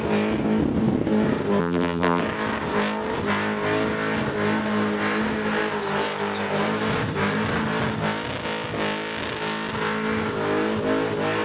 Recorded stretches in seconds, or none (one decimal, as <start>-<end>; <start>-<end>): 0.0-1.6; 2.2-11.4